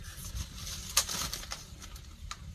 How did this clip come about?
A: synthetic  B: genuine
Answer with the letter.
B